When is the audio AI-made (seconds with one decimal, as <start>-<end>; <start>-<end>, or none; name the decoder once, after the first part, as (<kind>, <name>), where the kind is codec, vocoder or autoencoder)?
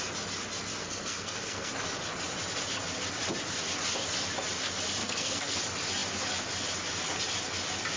0.8-1.7 (codec, SNAC); 5.0-5.6